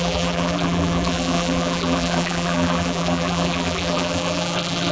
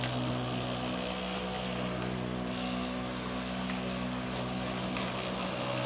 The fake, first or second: first